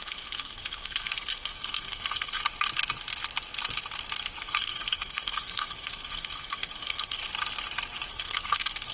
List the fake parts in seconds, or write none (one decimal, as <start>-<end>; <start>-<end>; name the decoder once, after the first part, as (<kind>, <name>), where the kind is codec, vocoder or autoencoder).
0.0-2.4 (codec, SNAC); 4.4-7.2; 8.1-8.9

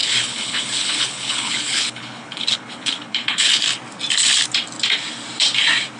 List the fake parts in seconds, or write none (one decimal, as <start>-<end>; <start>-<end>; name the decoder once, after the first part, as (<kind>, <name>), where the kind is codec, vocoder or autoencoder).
0.0-3.6 (codec, HILCodec)

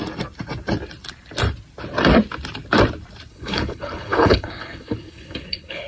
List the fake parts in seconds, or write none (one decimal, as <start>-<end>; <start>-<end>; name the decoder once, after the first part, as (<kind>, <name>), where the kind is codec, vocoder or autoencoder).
3.3-5.9 (codec, HILCodec)

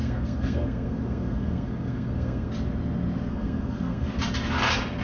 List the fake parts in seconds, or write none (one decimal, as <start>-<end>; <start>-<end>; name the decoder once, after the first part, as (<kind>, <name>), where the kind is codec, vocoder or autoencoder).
0.0-2.5 (codec, SNAC); 3.3-4.1

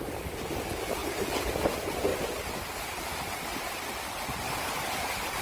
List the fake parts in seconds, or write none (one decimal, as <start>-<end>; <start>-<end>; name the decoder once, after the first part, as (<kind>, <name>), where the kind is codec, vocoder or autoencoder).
1.0-1.5 (vocoder, BigVGAN v2)